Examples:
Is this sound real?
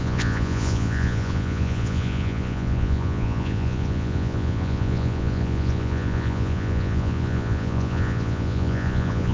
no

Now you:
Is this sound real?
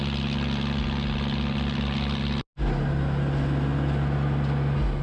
yes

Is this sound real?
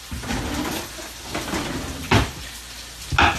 yes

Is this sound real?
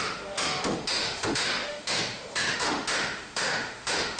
no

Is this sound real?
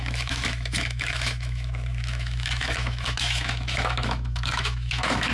no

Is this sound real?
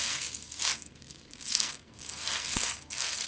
no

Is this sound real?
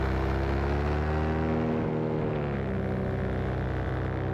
yes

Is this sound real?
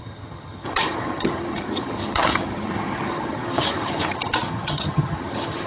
no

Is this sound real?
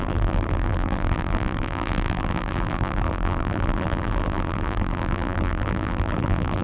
no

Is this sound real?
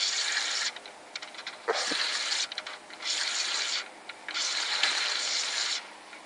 yes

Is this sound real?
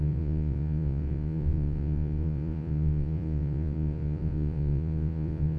no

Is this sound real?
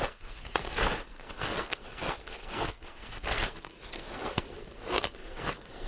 no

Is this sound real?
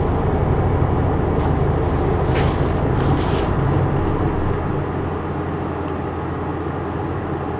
yes